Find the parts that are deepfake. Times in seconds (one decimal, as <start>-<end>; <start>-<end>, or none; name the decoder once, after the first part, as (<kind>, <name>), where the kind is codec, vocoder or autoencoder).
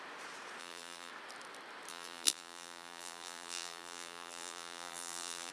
0.6-1.1 (vocoder, BigVGAN v2); 1.9-5.5